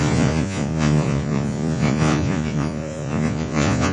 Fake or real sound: fake